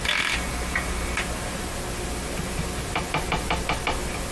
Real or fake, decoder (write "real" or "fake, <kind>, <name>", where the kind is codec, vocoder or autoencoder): real